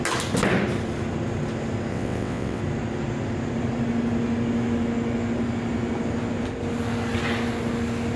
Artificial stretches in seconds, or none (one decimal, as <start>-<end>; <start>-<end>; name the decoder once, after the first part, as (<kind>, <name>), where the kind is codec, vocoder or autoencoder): 1.9-2.6 (vocoder, WaveNeXt)

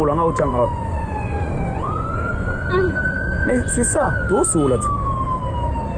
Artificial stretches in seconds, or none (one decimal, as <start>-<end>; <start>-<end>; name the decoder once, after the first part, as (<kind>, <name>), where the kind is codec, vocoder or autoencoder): 0.5-4.1 (vocoder, Vocos)

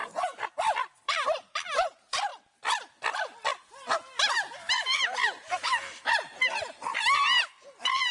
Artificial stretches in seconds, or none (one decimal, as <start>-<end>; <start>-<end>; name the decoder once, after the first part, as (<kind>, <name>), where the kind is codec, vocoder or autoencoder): 1.0-2.3 (vocoder, BigVGAN v2); 4.7-8.1

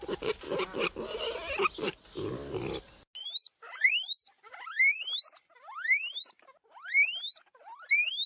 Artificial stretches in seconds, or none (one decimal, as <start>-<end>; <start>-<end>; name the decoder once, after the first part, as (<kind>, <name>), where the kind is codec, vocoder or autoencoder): none

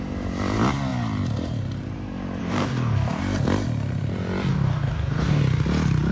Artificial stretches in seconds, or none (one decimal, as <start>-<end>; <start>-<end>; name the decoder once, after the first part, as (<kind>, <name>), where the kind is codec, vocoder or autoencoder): 2.4-3.2 (codec, DAC); 4.5-5.4

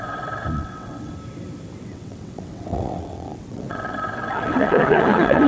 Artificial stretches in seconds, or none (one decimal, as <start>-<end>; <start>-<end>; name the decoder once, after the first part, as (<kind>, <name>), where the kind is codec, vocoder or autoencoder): 0.0-1.1 (vocoder, WaveNeXt); 1.8-5.5